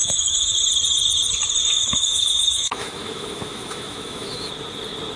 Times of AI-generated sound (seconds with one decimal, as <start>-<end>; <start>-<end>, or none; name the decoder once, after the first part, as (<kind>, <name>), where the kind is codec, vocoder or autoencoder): 0.0-0.6 (autoencoder, DAC-VAE); 1.7-4.5